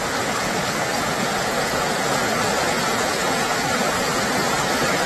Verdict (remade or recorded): remade